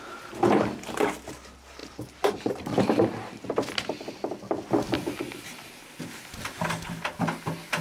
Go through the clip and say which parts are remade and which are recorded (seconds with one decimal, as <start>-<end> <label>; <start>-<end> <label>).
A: 0.0-7.8 recorded